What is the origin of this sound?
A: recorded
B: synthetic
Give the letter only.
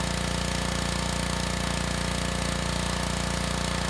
A